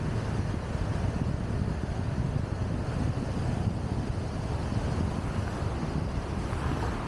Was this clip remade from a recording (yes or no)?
no